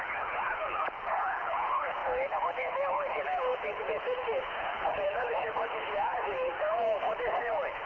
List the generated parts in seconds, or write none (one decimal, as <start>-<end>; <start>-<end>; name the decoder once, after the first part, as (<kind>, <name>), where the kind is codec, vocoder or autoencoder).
0.0-7.9 (codec, HILCodec)